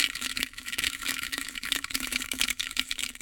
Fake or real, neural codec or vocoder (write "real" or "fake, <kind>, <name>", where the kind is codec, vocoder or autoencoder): fake, autoencoder, DAC-VAE